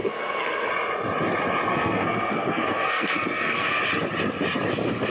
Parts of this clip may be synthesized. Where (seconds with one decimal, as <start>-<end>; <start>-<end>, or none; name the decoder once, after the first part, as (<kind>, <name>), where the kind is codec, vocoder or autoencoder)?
0.0-0.7 (codec, SNAC); 1.7-3.8